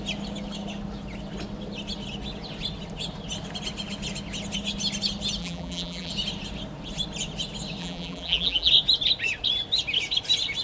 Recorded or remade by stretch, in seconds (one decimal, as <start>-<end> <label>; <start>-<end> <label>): 0.0-5.4 recorded; 5.4-6.1 remade; 6.1-7.8 recorded; 7.8-8.7 remade; 8.7-10.6 recorded